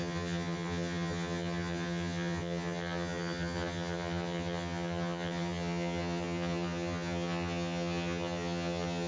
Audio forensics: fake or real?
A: fake